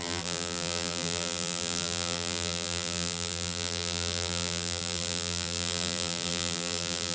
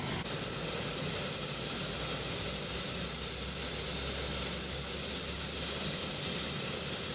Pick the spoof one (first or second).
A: first